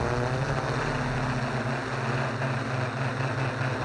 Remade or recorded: recorded